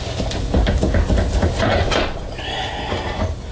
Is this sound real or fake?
real